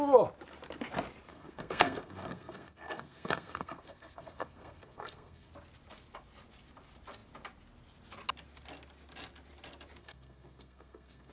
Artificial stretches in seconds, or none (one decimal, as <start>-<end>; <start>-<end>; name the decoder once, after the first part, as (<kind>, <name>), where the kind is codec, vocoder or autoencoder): 1.3-5.5 (codec, SNAC); 10.0-11.3